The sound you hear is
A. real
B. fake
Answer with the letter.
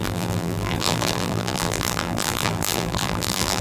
B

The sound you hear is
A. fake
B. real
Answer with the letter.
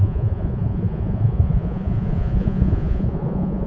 A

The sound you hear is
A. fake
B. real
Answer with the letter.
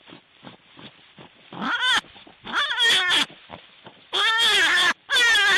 B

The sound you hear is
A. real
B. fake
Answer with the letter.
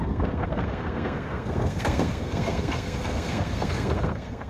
B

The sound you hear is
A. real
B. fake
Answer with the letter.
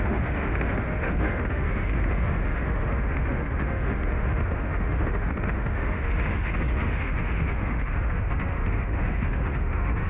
B